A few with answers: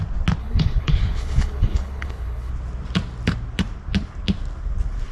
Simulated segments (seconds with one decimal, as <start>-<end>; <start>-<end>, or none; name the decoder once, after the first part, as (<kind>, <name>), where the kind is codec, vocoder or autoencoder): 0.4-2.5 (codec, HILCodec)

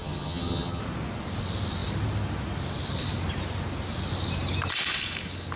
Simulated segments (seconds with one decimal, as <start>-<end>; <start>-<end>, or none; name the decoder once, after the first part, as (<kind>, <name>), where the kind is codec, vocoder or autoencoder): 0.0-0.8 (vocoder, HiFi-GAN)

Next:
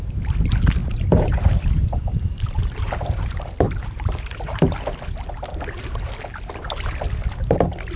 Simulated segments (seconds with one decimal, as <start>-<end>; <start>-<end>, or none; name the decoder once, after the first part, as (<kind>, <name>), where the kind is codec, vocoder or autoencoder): 0.8-4.7 (vocoder, BigVGAN v2)

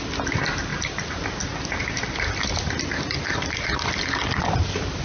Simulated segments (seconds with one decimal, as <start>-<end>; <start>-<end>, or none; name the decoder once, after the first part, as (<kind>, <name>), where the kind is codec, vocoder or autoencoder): none